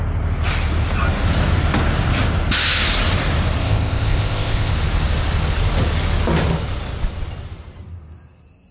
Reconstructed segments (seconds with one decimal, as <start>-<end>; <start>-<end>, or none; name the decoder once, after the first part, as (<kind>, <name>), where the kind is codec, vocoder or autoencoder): 3.6-4.7 (codec, ZipCodec)